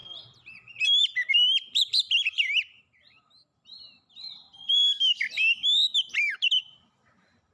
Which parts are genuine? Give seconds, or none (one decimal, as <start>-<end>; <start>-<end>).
4.8-6.3